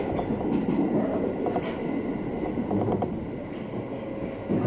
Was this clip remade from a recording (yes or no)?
no